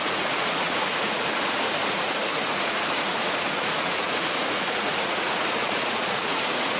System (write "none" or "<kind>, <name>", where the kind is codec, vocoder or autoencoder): vocoder, Vocos